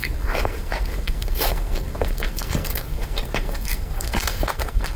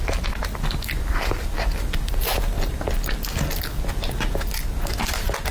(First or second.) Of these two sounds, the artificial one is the first